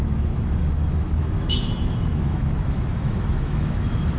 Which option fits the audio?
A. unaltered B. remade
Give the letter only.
B